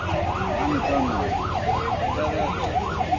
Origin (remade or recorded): recorded